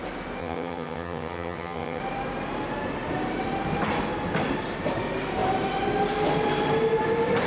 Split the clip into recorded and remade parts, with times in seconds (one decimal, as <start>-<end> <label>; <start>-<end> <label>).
0.0-0.4 recorded; 0.4-2.0 remade; 2.0-7.5 recorded